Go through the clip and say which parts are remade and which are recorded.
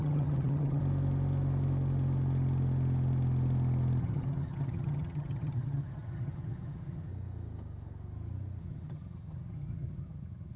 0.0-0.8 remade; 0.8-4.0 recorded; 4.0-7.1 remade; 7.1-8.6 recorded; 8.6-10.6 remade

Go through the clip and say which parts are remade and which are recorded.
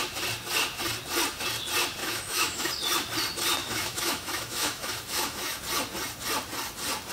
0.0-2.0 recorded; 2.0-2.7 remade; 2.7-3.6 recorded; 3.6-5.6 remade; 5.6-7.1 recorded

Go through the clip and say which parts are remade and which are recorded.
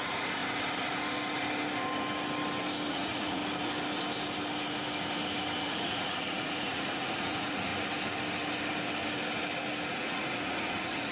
0.0-0.4 remade; 0.4-2.9 recorded; 2.9-3.4 remade; 3.4-5.6 recorded; 5.6-7.7 remade; 7.7-9.9 recorded; 9.9-11.1 remade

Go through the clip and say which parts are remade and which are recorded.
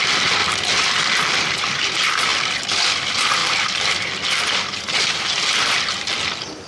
0.0-0.4 remade; 0.4-1.2 recorded; 1.2-6.7 remade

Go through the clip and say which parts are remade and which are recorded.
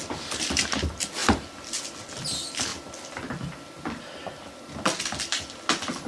0.0-6.1 recorded